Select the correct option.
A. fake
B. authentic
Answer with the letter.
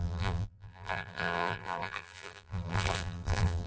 A